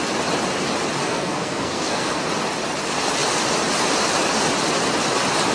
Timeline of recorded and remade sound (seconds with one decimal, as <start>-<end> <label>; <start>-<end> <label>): 0.0-1.0 recorded; 1.0-2.2 remade; 2.2-5.5 recorded